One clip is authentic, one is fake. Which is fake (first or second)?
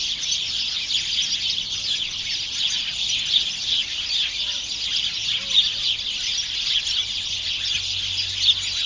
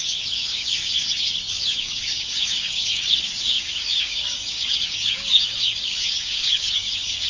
second